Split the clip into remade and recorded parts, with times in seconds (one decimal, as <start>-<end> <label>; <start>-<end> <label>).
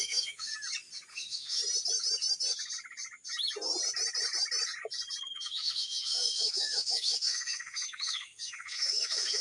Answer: 0.0-0.5 remade; 0.5-1.1 recorded; 1.1-1.6 remade; 1.6-5.2 recorded; 5.2-9.4 remade